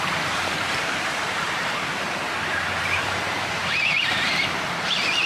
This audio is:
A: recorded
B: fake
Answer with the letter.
B